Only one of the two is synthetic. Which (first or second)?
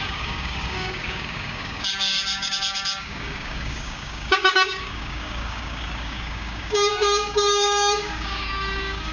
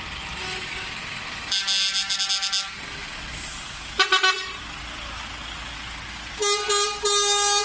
first